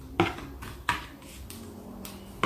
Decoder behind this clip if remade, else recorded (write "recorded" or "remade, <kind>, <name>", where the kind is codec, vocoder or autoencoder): recorded